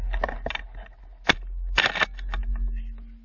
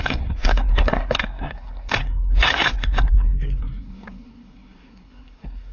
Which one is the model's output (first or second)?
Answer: second